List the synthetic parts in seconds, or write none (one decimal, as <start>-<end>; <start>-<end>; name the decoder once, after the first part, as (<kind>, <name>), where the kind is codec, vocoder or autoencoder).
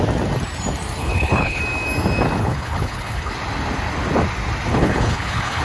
1.0-1.6 (codec, HILCodec); 2.4-3.3; 4.7-5.6